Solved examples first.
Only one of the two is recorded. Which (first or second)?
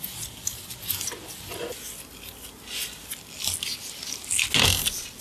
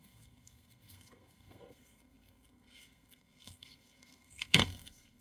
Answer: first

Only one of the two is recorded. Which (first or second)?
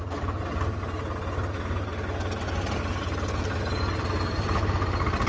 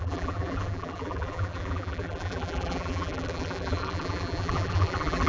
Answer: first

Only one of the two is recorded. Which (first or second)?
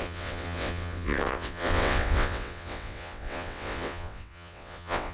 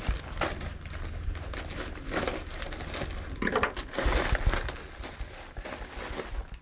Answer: second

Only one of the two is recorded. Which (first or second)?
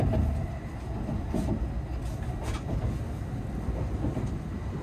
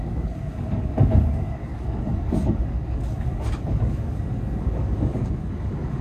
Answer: first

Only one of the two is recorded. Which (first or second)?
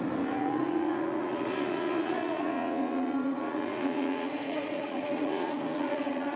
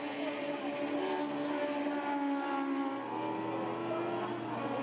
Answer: second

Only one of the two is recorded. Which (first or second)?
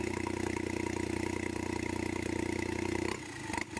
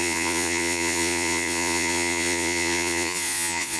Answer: first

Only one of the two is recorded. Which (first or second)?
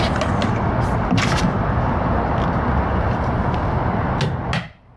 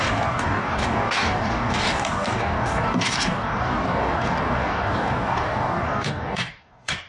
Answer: first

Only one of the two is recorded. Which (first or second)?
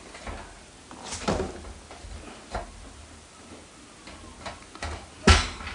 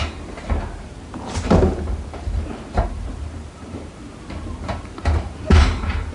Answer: first